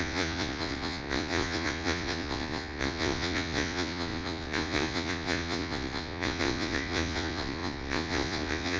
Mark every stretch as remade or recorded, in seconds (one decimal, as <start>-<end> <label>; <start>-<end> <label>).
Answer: 0.0-8.8 remade